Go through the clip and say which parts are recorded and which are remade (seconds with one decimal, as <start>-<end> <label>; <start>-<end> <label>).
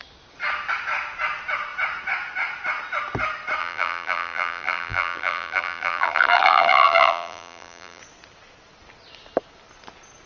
0.0-3.6 recorded; 3.6-8.0 remade; 8.0-10.3 recorded